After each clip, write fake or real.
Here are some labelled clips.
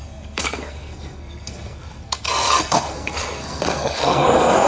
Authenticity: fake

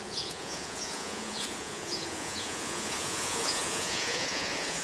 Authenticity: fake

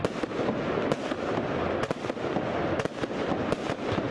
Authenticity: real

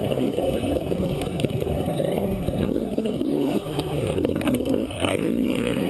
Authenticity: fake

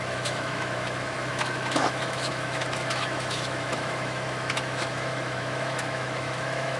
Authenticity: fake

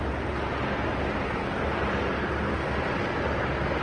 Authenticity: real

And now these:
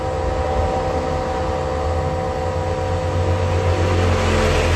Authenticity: real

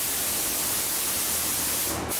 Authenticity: real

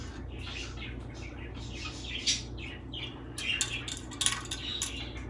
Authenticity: real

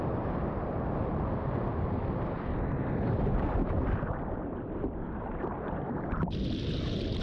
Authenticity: real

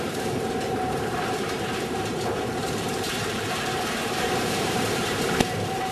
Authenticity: fake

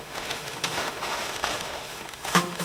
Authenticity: fake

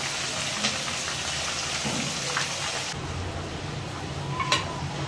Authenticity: real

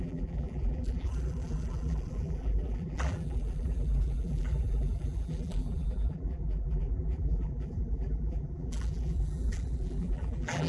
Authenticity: fake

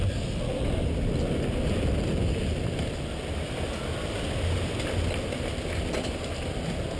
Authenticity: real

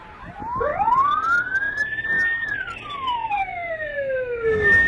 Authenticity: real